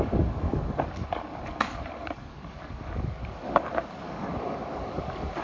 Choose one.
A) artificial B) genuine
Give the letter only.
A